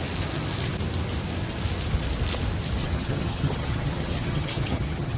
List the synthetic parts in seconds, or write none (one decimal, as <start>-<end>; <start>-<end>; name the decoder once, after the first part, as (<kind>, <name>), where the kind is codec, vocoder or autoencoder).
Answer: 2.8-5.2 (vocoder, HiFi-GAN)